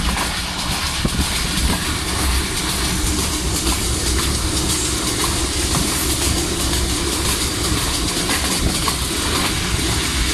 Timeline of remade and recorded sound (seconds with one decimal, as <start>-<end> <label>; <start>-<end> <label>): 0.0-10.3 recorded